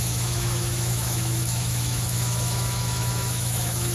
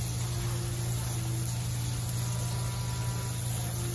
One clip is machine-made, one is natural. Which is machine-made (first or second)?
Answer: first